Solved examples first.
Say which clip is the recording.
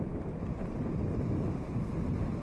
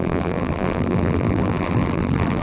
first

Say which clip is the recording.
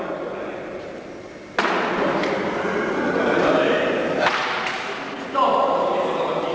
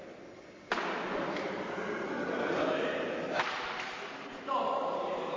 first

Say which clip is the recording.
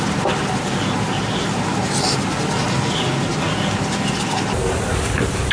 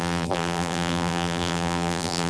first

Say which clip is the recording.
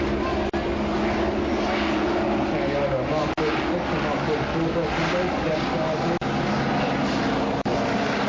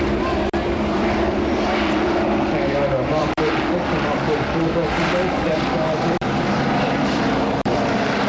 first